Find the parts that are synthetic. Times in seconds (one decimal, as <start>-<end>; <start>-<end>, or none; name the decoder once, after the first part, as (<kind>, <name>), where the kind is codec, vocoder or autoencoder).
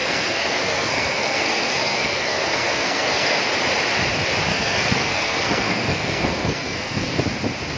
0.0-3.4 (codec, SNAC); 4.5-7.2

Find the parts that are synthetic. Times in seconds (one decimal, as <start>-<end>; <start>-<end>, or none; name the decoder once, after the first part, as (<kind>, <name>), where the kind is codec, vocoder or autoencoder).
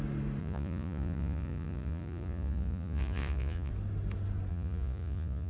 0.4-3.7 (vocoder, Vocos); 4.5-5.5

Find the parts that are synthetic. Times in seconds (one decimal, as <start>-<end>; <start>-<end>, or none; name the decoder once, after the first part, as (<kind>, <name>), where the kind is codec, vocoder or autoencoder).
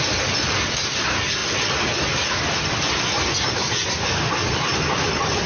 none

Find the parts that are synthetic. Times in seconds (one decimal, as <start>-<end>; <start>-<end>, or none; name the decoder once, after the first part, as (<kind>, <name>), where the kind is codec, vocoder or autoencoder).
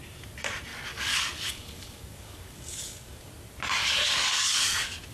0.7-3.3 (codec, DAC); 3.8-5.1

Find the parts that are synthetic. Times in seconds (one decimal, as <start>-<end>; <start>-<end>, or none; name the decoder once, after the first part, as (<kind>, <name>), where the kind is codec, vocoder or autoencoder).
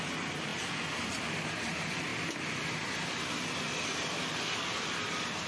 none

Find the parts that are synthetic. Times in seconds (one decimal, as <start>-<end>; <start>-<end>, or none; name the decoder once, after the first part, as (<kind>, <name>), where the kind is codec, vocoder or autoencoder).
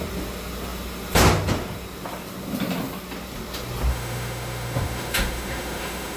3.9-6.2 (autoencoder, DAC-VAE)